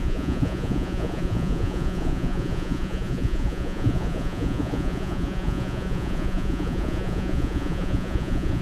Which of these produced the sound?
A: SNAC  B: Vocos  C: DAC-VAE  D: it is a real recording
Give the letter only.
B